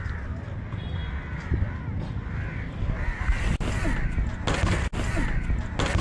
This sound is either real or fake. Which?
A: real